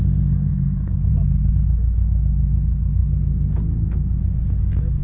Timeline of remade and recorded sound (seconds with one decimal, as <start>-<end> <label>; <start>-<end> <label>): 0.0-0.5 recorded; 0.5-1.5 remade; 1.5-5.0 recorded

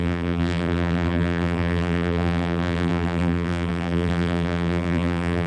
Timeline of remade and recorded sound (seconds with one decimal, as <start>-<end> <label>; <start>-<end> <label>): 0.0-5.5 remade

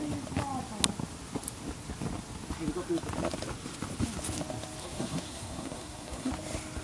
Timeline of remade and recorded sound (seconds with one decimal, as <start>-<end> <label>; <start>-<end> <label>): 0.0-4.8 recorded; 4.8-6.3 remade; 6.3-6.8 recorded

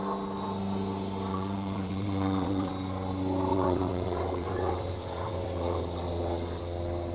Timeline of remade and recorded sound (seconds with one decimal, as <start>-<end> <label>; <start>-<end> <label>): 0.0-1.3 recorded; 1.3-2.7 remade; 2.7-3.5 recorded; 3.5-6.6 remade; 6.6-7.1 recorded